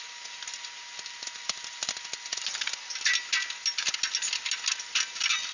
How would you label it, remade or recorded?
recorded